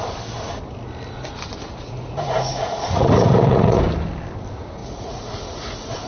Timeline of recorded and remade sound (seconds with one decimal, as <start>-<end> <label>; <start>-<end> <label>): 0.0-1.6 recorded; 1.6-3.8 remade; 3.8-4.8 recorded; 4.8-6.1 remade